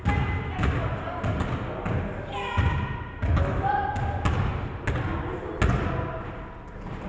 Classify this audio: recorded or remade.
recorded